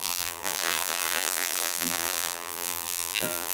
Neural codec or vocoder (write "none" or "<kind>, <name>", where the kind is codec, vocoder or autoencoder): vocoder, BigVGAN v2